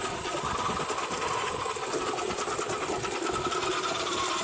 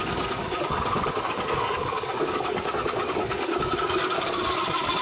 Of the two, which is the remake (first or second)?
second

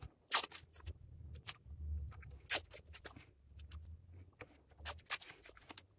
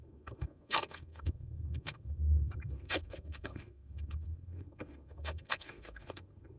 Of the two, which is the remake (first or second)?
second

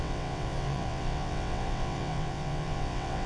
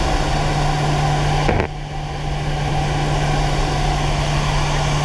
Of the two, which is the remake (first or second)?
first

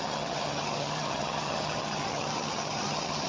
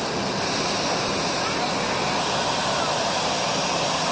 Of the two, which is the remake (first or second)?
first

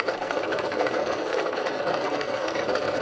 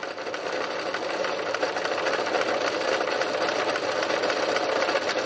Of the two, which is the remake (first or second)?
first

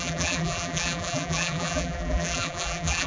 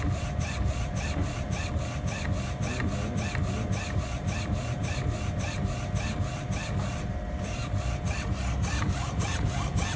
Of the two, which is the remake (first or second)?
first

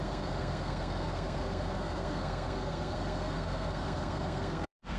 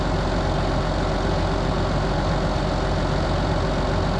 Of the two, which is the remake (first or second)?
first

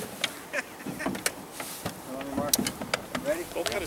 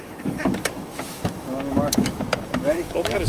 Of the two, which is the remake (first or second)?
second